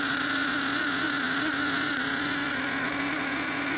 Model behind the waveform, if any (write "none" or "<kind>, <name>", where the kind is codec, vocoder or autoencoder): vocoder, Vocos